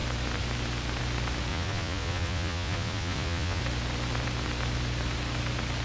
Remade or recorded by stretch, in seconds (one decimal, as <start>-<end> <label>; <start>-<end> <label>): 0.0-1.5 recorded; 1.5-3.6 remade; 3.6-5.8 recorded